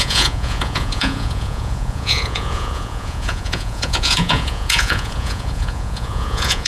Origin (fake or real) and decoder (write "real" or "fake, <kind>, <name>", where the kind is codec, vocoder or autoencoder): fake, vocoder, Vocos